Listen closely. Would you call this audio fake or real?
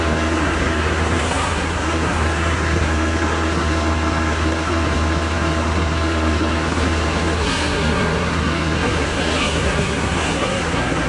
fake